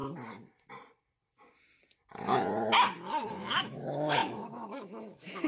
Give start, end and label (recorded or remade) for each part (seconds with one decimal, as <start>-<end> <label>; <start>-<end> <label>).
0.0-3.3 recorded; 3.3-5.5 remade